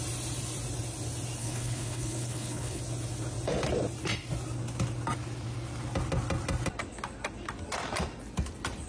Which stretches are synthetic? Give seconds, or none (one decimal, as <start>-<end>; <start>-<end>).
1.4-2.8